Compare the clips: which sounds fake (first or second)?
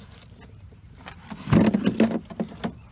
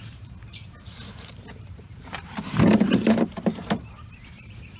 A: second